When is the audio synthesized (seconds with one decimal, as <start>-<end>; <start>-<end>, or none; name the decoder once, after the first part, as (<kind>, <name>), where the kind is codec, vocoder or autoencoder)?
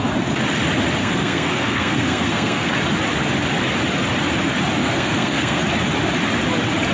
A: 1.0-2.7 (codec, SNAC); 4.8-5.6